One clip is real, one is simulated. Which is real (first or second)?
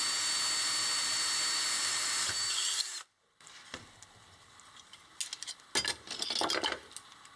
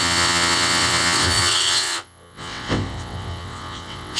first